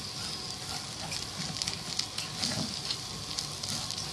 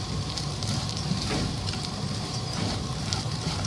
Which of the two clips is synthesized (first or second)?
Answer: second